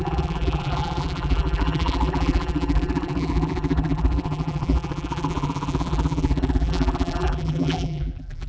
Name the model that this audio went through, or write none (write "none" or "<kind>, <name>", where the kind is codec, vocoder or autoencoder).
vocoder, BigVGAN v2